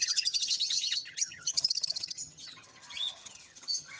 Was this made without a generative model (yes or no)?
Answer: no